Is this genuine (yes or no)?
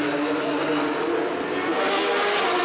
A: yes